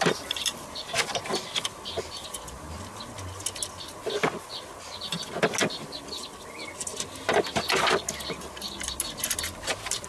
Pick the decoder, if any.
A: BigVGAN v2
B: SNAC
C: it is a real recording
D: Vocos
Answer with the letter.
C